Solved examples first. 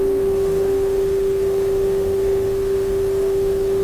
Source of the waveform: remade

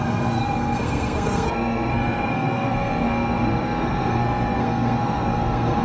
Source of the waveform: remade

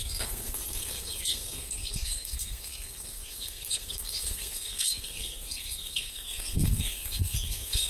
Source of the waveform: remade